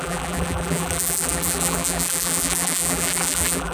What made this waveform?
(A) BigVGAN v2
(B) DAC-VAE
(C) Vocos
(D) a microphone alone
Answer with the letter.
A